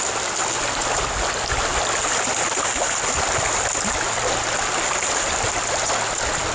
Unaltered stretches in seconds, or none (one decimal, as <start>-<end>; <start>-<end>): 0.0-6.5